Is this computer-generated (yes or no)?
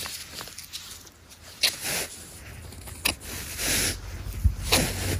no